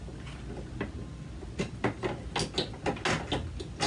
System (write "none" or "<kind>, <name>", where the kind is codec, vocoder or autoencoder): none